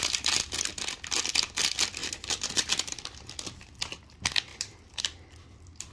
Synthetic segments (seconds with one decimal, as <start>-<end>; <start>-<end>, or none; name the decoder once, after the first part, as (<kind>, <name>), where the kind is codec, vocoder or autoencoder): 2.0-2.7 (vocoder, BigVGAN v2); 4.5-5.0